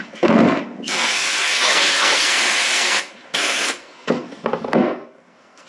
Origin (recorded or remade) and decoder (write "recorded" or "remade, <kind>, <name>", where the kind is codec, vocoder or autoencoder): remade, codec, SNAC